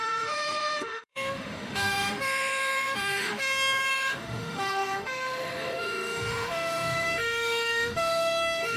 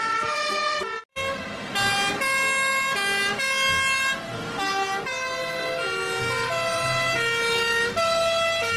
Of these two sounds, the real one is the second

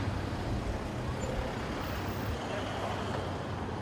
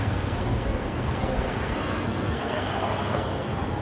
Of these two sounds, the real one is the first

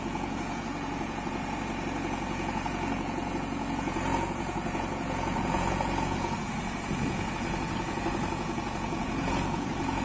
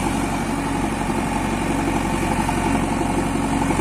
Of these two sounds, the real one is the second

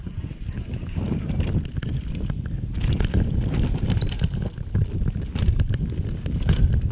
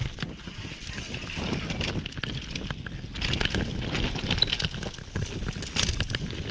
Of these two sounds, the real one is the second